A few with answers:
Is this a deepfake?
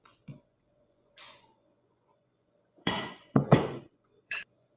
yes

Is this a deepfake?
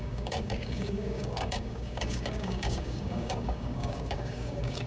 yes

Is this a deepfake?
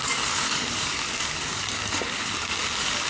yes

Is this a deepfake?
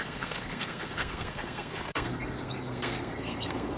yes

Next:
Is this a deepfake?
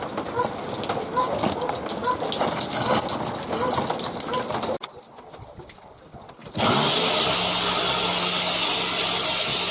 no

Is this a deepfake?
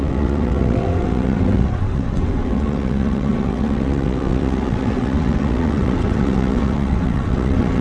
yes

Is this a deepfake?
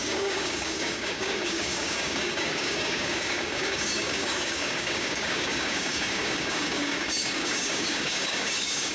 yes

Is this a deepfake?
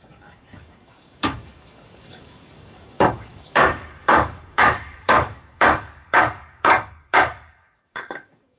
yes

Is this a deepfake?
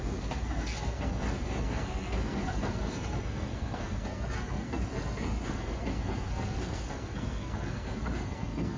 yes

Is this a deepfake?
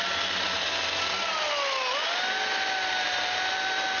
no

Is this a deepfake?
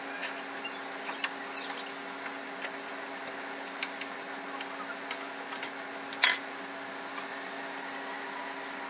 no